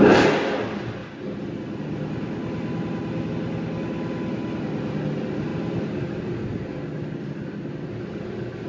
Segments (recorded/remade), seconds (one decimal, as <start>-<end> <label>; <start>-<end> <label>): 0.0-8.7 recorded